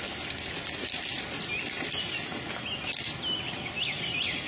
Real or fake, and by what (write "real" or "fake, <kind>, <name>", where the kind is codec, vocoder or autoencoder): real